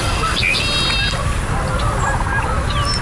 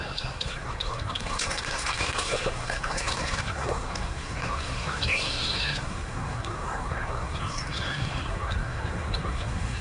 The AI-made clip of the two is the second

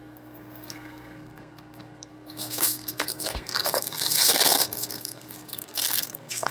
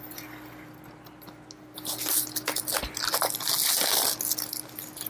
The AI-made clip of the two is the first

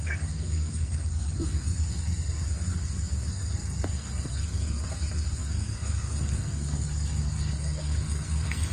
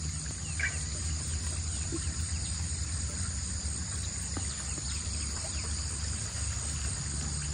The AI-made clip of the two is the first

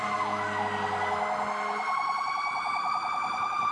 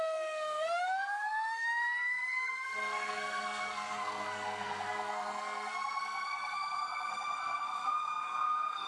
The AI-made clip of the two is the second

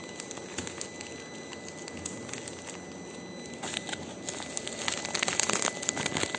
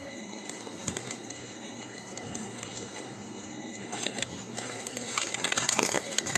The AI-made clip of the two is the second